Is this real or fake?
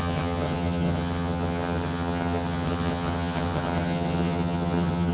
fake